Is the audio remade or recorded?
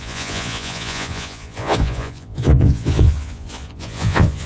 remade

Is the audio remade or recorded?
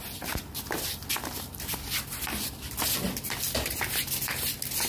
recorded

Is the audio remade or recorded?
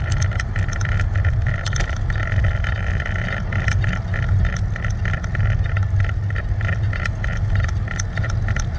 recorded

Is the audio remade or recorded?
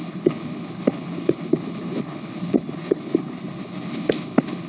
remade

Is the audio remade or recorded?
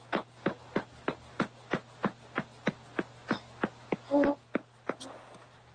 recorded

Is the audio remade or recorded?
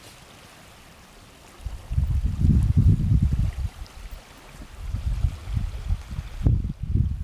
recorded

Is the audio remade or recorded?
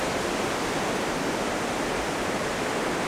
recorded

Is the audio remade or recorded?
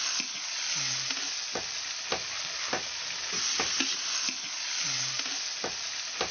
recorded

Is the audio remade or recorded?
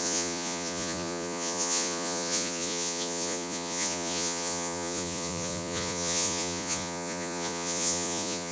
remade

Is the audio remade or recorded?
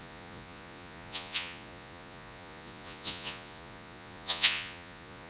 remade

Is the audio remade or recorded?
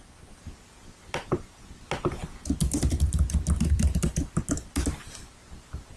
recorded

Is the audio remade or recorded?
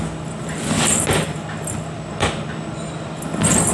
recorded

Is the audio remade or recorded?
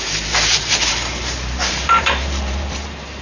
remade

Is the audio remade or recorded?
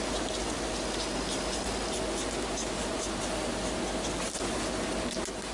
recorded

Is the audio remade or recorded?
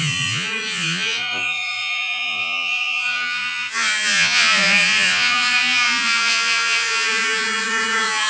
remade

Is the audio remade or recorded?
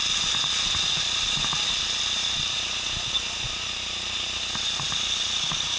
recorded